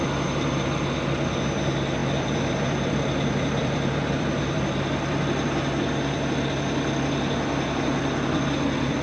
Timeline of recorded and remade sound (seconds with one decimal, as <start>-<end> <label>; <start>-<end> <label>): 0.0-2.0 recorded; 2.0-5.2 remade; 5.2-9.0 recorded